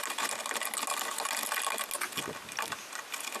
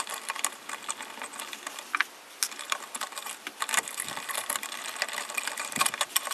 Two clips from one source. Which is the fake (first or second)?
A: second